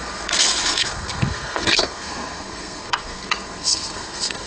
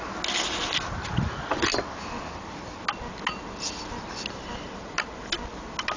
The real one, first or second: second